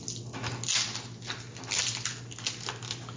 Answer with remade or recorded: recorded